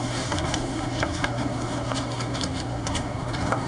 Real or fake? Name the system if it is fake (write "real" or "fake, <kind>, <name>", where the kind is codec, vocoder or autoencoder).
fake, codec, SNAC